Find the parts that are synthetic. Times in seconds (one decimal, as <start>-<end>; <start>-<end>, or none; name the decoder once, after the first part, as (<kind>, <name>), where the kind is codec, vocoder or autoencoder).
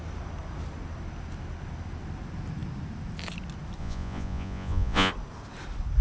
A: 3.8-5.1 (vocoder, Vocos)